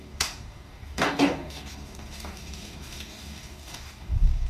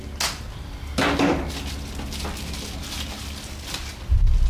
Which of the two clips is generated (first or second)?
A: first